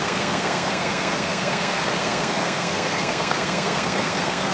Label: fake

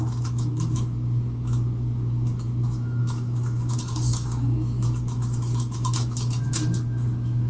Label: fake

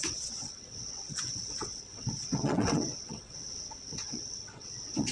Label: fake